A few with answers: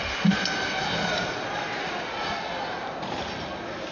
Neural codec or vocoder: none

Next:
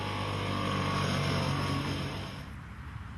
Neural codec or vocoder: none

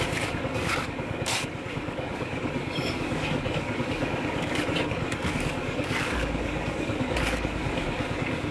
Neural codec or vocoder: codec, DAC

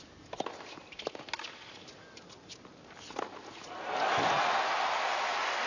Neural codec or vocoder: none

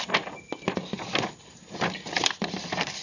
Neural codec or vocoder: none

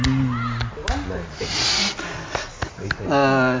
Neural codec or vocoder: none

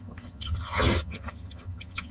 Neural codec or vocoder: vocoder, HiFi-GAN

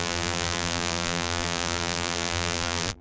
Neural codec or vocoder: vocoder, BigVGAN v2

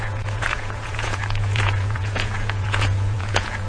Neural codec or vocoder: vocoder, Vocos